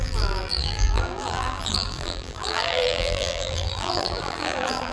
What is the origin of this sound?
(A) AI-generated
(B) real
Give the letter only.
A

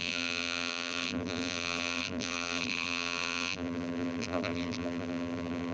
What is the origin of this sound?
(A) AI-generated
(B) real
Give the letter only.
A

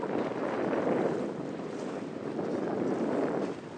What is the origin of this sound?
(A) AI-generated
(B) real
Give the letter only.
B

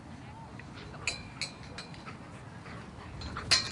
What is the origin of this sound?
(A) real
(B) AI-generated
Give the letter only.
A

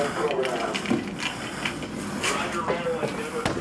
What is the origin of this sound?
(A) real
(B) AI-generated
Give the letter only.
A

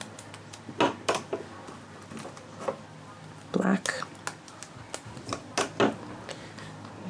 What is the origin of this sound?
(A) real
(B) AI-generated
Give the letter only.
A